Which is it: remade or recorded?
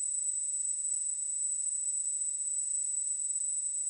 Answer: remade